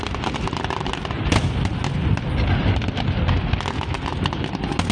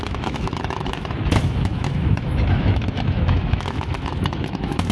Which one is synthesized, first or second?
second